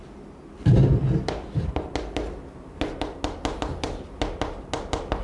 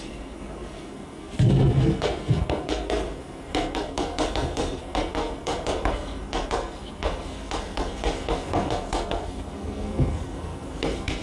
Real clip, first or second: first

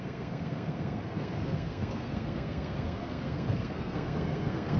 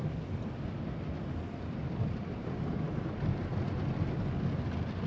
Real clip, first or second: second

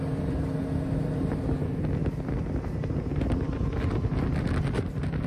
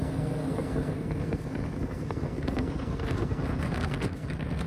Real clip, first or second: first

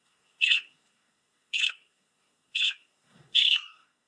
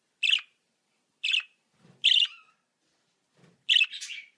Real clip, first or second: second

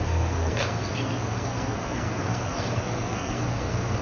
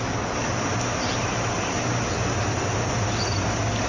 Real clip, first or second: second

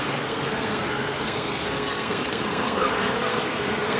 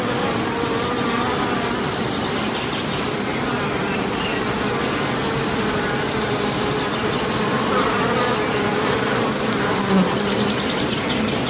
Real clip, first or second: second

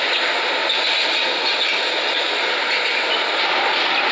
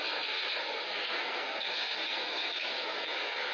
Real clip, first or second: first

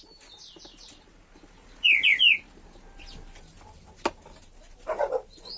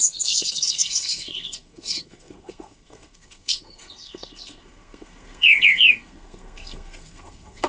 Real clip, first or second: first